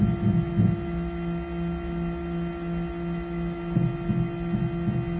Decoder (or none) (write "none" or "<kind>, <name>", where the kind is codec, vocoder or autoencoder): none